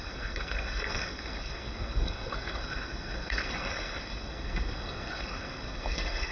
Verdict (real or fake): fake